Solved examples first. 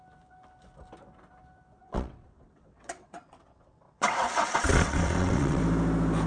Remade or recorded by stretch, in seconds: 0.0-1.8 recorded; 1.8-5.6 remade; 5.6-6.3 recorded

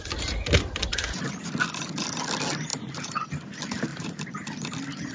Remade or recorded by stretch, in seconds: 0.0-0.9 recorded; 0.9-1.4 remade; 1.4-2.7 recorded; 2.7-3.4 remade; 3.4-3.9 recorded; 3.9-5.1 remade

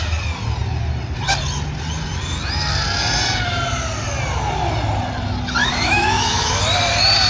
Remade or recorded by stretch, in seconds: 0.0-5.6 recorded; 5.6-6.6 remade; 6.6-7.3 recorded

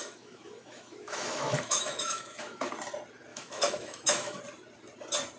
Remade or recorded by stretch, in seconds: 0.0-2.7 remade; 2.7-3.3 recorded; 3.3-4.4 remade; 4.4-5.4 recorded

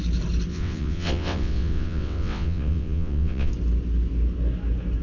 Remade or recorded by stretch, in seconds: 0.0-0.5 recorded; 0.5-3.5 remade; 3.5-5.0 recorded

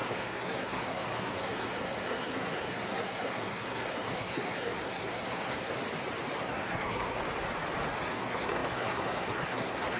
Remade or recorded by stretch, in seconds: 0.0-5.7 remade; 5.7-6.4 recorded; 6.4-7.2 remade; 7.2-8.0 recorded; 8.0-10.0 remade